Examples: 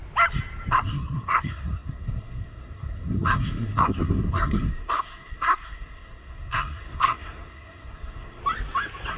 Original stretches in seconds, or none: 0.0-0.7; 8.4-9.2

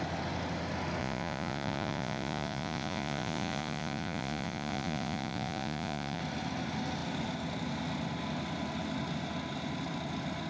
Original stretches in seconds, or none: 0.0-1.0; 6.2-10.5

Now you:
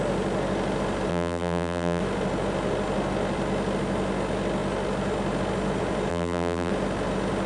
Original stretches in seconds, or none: 0.0-1.1; 2.0-6.1; 6.7-7.5

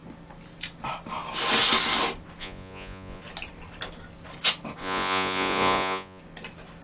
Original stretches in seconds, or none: 0.0-2.4; 3.2-4.8; 6.2-6.8

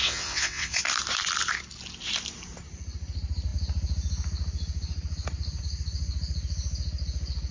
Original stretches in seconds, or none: 0.8-7.5